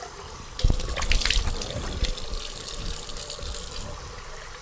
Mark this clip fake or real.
real